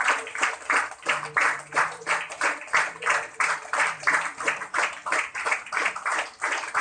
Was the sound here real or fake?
real